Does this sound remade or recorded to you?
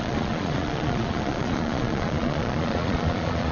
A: remade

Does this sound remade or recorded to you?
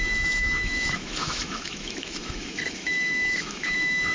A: remade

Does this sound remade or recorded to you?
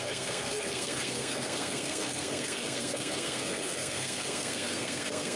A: remade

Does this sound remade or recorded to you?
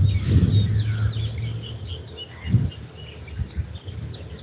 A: recorded